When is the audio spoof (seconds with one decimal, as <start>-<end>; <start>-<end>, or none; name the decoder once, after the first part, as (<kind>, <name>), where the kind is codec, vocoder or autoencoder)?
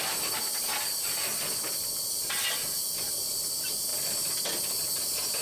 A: none